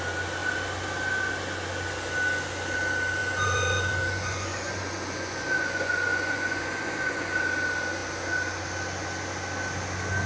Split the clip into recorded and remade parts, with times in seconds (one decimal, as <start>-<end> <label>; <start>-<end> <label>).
0.0-3.2 recorded; 3.2-7.4 remade; 7.4-10.3 recorded

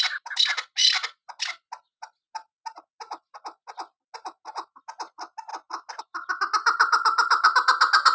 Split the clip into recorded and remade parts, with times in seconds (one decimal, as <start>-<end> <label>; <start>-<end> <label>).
0.0-8.1 recorded

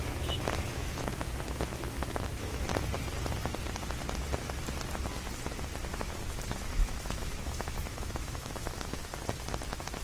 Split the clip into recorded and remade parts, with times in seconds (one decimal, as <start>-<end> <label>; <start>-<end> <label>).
0.0-2.7 remade; 2.7-5.9 recorded; 5.9-9.0 remade; 9.0-10.0 recorded

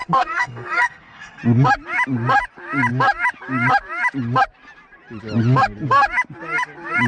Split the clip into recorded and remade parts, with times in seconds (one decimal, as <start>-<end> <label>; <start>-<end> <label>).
0.0-1.4 remade; 1.4-7.1 recorded

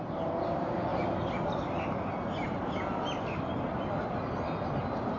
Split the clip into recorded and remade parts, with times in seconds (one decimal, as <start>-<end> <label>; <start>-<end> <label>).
0.0-5.2 recorded

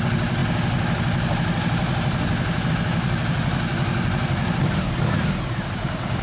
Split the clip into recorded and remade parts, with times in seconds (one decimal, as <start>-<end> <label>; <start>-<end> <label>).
0.0-6.2 recorded